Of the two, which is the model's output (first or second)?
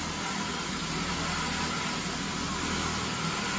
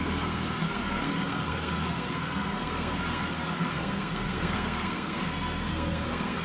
second